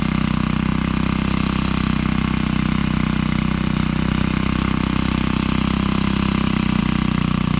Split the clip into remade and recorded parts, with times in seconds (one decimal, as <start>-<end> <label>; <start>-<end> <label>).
0.0-7.6 recorded